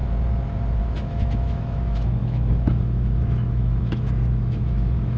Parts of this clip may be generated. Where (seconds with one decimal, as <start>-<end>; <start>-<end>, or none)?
0.8-5.2